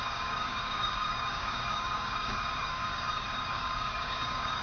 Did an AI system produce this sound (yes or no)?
yes